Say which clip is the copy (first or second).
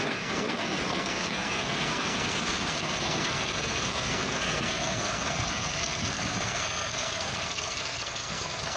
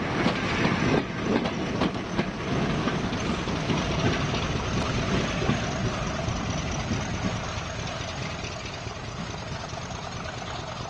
first